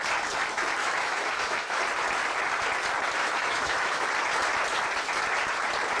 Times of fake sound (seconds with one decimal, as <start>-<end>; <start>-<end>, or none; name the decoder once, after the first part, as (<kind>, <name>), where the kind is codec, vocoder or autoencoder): 0.8-1.8 (autoencoder, DAC-VAE); 3.2-4.1